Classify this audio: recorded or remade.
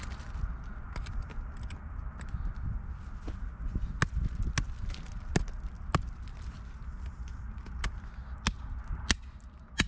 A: recorded